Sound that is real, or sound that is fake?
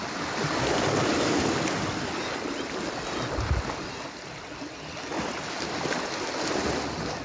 real